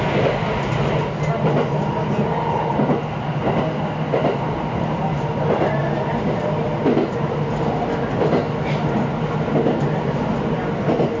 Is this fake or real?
real